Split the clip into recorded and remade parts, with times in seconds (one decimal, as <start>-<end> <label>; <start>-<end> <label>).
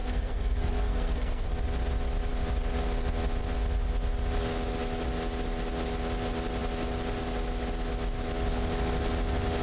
0.0-1.5 remade; 1.5-9.6 recorded